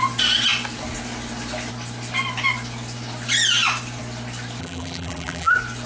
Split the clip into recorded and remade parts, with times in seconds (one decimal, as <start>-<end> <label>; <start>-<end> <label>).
0.0-4.6 recorded; 4.6-5.5 remade; 5.5-5.9 recorded